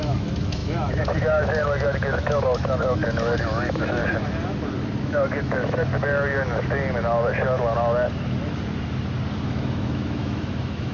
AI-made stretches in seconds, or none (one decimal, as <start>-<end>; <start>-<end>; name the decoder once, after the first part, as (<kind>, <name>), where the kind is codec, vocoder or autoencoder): 0.0-4.0 (autoencoder, DAC-VAE); 5.0-5.9; 9.5-10.9